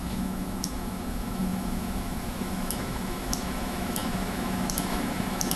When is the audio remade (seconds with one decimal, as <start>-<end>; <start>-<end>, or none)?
0.0-5.6